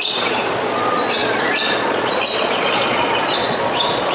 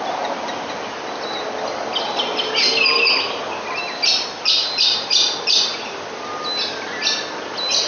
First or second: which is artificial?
first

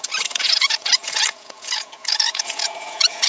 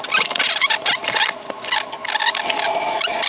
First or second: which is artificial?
first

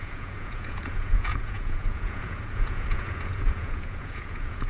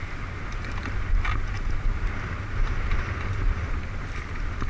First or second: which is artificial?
first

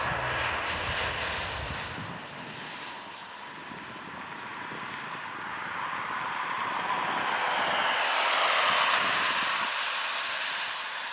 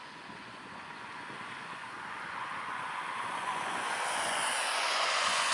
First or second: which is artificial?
second